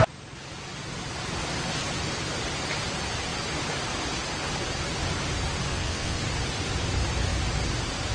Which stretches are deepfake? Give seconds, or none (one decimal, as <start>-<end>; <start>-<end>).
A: 5.7-6.2